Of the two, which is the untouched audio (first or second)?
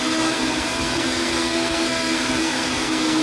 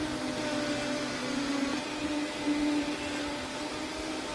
second